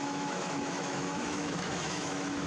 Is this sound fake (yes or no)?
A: yes